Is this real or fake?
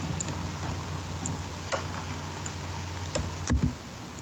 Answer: real